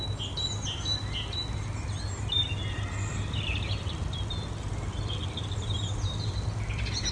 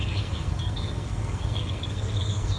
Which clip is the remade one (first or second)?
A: second